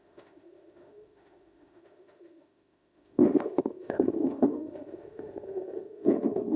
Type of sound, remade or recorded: remade